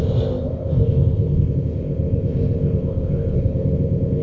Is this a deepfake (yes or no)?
yes